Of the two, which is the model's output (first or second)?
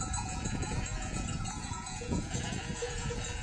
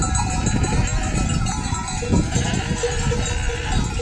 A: first